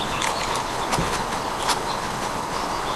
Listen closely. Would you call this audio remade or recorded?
remade